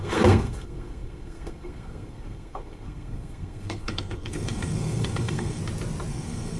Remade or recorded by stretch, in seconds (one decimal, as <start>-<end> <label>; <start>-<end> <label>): 0.0-5.6 remade; 5.6-6.1 recorded; 6.1-6.6 remade

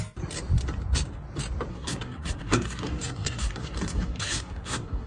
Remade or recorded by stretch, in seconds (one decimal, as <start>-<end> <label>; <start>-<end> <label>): 0.0-1.7 recorded; 1.7-5.1 remade

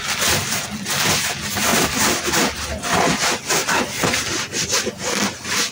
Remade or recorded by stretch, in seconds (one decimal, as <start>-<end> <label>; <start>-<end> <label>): 0.0-5.7 recorded